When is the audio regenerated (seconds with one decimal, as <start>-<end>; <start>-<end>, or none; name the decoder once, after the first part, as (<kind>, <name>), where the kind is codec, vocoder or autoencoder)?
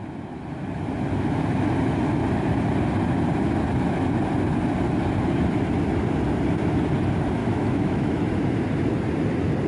7.4-8.2 (autoencoder, DAC-VAE)